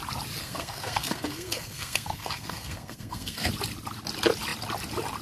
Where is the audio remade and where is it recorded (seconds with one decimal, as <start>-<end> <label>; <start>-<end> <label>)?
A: 0.0-0.4 recorded; 0.4-3.5 remade; 3.5-5.2 recorded